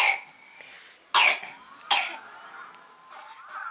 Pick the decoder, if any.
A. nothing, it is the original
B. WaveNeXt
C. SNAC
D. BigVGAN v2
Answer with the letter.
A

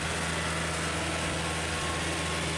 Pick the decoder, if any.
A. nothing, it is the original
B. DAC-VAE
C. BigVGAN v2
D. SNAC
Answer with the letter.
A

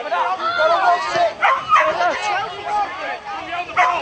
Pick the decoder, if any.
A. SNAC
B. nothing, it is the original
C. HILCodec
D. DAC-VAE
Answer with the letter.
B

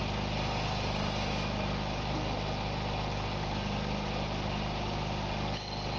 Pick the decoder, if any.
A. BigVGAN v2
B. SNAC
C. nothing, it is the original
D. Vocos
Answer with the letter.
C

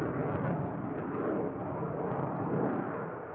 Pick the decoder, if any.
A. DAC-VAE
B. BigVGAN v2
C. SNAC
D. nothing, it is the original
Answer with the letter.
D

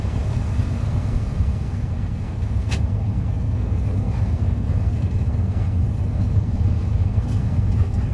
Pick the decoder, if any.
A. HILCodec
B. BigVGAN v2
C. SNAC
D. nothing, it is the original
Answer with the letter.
C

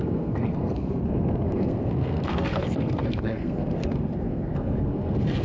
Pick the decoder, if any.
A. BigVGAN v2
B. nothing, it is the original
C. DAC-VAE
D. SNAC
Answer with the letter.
D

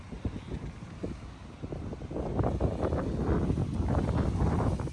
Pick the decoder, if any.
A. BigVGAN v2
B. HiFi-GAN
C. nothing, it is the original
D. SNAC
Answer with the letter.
C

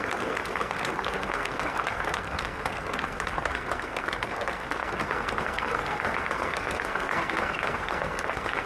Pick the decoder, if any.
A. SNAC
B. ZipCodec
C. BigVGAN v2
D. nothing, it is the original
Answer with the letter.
A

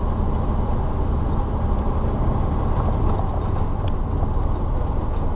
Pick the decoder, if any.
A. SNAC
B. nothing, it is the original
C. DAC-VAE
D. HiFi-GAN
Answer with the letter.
B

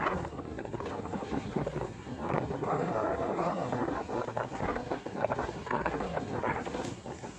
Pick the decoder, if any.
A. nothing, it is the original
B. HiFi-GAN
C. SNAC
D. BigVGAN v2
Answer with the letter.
C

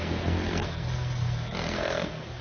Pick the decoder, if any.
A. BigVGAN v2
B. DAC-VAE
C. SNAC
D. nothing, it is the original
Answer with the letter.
C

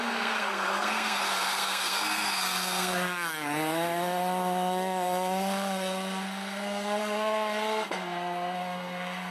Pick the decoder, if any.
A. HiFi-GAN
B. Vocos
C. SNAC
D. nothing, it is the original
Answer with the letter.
C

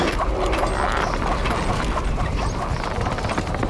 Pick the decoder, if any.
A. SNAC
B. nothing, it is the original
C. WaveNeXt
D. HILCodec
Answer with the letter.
B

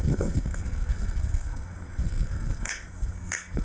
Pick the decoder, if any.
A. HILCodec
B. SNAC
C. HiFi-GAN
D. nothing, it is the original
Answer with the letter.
B